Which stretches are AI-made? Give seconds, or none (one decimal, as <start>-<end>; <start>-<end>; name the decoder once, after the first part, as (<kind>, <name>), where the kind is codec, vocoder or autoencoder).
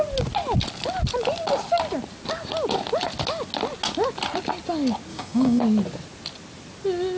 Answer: 5.1-5.6 (codec, DAC)